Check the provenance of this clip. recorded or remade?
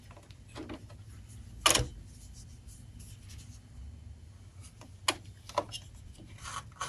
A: recorded